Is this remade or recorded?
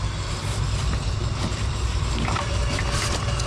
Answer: remade